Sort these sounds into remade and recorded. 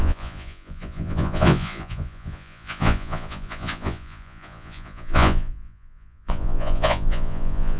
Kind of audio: remade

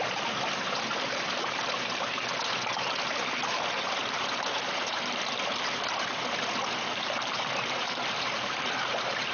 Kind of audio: remade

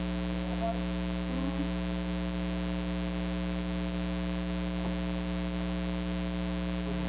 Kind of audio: recorded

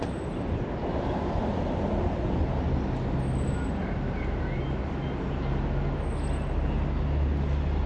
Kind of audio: recorded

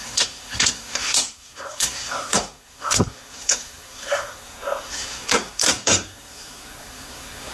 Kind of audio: remade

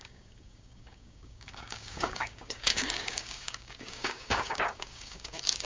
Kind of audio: remade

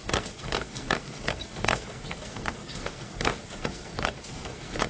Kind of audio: remade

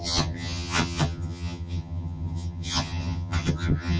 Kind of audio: remade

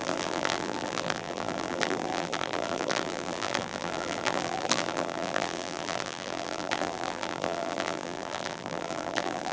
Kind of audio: remade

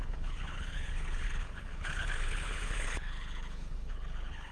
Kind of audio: remade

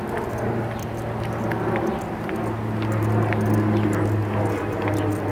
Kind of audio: recorded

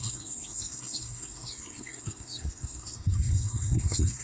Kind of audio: remade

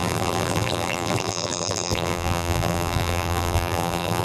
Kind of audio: remade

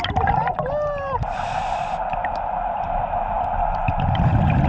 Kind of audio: recorded